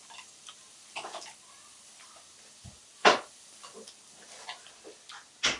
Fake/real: fake